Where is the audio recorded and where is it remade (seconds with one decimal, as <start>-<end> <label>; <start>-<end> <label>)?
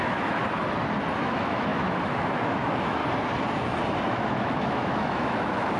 0.0-0.4 remade; 0.4-1.2 recorded; 1.2-3.0 remade; 3.0-4.1 recorded; 4.1-5.8 remade